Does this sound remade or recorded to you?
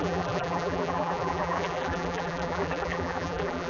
remade